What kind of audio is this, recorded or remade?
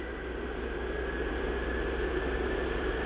recorded